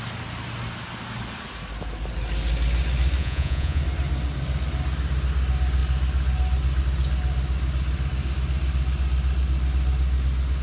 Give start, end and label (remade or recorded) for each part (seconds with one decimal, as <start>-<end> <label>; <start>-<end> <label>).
0.0-3.2 recorded; 3.2-3.8 remade; 3.8-10.6 recorded